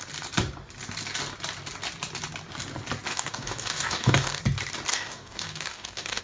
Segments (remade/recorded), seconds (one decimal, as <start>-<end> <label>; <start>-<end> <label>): 0.0-3.1 recorded; 3.1-4.4 remade; 4.4-4.9 recorded; 4.9-6.2 remade